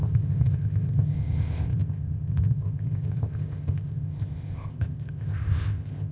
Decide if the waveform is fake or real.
fake